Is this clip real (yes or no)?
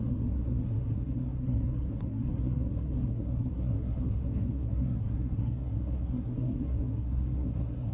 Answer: no